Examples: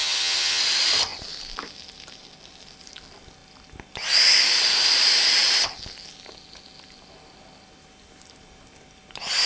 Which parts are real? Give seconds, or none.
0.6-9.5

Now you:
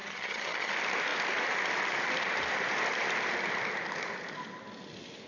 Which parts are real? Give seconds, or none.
0.7-5.3

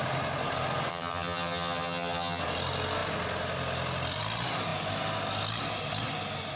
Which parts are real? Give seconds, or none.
0.0-0.9; 2.4-6.6

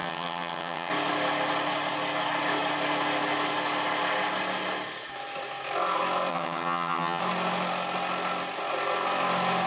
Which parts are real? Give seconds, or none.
0.9-6.3; 7.2-9.7

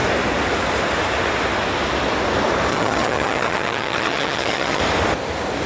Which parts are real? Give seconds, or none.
0.0-2.7; 4.8-5.7

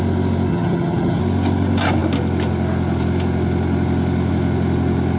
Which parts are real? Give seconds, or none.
0.0-0.5; 1.2-5.2